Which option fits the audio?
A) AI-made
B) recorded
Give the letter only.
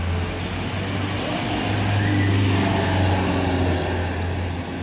B